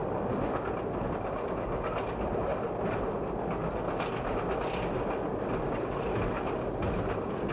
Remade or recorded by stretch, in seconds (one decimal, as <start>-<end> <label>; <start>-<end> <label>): 0.0-7.5 recorded